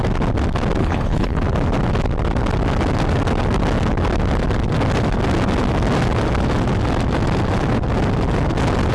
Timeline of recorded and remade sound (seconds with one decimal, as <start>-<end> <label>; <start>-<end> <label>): 0.0-0.8 recorded; 0.8-1.4 remade; 1.4-8.9 recorded